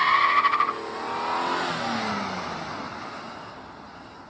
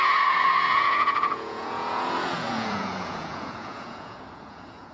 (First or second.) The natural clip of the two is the first